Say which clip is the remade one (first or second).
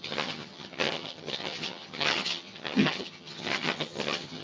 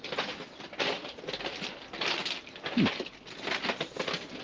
first